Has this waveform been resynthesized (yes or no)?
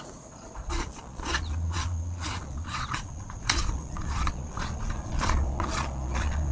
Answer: yes